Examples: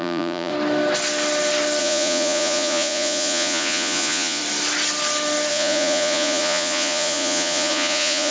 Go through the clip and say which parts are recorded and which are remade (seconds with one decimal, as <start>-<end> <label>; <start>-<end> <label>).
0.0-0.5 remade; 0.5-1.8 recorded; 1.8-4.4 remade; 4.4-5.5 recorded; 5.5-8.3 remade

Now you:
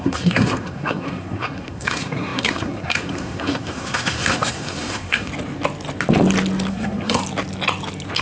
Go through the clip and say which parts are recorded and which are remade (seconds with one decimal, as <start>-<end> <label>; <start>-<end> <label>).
0.0-5.3 remade; 5.3-6.7 recorded; 6.7-7.2 remade; 7.2-8.2 recorded

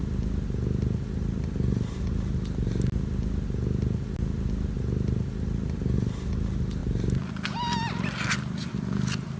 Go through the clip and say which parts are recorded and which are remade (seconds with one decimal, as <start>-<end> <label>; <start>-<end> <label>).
0.0-9.4 recorded

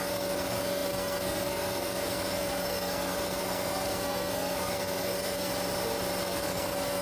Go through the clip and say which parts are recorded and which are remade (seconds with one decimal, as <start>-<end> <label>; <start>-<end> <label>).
0.0-5.5 remade; 5.5-6.2 recorded; 6.2-7.0 remade

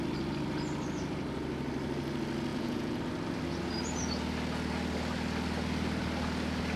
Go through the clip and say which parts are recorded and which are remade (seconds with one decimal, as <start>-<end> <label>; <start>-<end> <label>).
0.0-2.5 recorded; 2.5-3.0 remade; 3.0-6.8 recorded